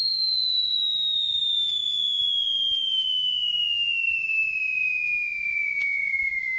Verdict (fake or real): fake